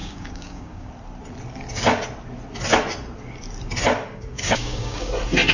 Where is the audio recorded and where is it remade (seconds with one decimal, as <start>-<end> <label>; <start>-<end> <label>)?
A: 0.0-0.9 remade; 0.9-4.1 recorded; 4.1-5.1 remade; 5.1-5.5 recorded

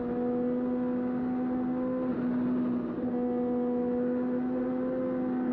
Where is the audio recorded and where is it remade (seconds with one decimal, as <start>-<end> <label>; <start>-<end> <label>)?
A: 0.0-5.5 recorded

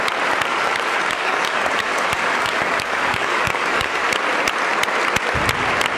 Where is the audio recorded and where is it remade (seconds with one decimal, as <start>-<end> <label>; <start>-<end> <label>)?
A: 0.0-0.5 recorded; 0.5-4.1 remade; 4.1-6.0 recorded

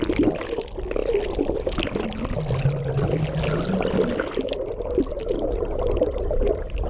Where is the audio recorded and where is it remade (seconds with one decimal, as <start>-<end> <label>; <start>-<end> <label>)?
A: 0.0-6.9 recorded